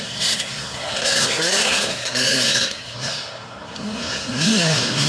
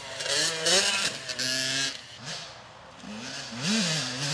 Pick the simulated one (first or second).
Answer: first